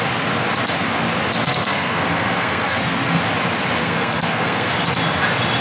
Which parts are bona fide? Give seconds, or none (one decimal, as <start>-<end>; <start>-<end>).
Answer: 0.0-1.4; 3.2-3.8; 4.7-5.6